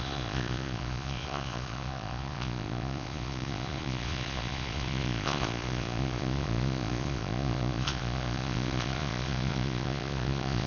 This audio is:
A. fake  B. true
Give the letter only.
A